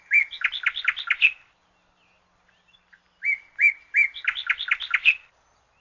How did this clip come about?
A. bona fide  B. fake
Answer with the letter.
A